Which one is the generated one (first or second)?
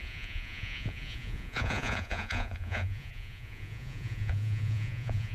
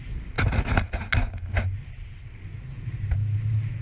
first